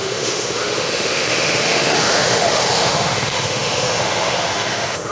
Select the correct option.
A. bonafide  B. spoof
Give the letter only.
B